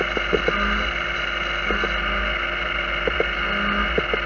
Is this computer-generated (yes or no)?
no